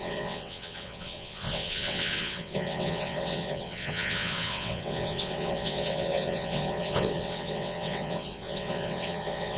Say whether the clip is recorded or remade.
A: remade